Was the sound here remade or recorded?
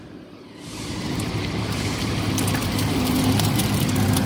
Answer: remade